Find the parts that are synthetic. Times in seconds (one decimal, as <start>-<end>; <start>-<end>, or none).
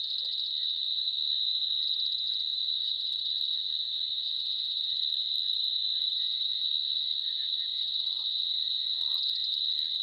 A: 2.5-3.3; 5.5-6.6; 7.7-8.4